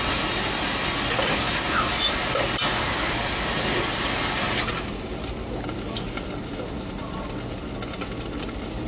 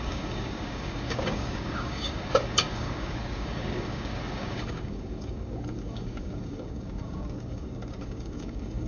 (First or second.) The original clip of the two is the first